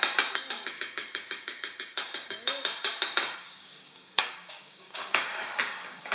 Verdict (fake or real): fake